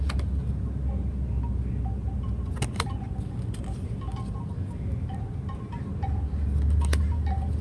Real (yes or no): yes